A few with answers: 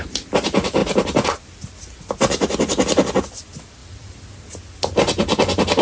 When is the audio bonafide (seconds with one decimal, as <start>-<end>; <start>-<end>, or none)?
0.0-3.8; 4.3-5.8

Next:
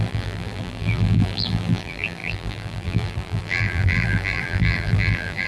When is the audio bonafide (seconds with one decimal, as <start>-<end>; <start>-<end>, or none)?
none

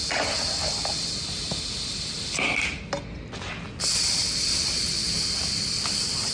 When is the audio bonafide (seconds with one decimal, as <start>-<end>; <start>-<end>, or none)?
0.0-3.8; 5.0-5.7

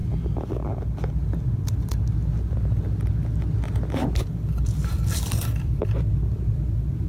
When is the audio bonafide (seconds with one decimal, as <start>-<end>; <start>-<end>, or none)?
0.0-4.3

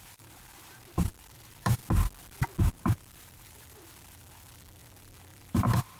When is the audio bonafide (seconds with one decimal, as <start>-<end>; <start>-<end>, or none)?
1.8-2.6

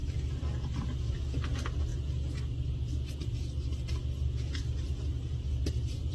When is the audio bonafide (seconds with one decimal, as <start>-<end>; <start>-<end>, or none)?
1.2-6.1

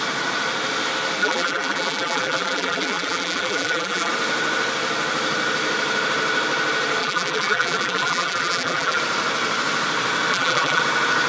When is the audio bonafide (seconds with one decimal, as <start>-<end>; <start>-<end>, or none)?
0.0-1.2; 4.1-7.0; 9.0-10.3; 10.8-11.3

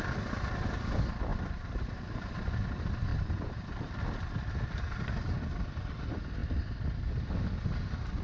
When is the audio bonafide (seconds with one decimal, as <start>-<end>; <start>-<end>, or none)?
0.0-1.3; 2.3-3.1; 4.0-8.2